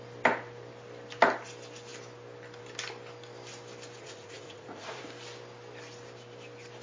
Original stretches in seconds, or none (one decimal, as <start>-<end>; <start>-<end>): 0.0-4.0; 5.0-6.8